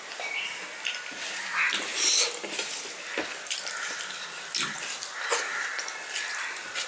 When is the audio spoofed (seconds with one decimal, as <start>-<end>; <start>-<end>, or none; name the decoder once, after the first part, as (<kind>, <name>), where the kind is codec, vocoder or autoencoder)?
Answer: none